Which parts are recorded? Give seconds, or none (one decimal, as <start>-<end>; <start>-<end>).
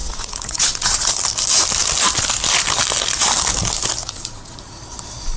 1.1-4.0; 4.8-5.4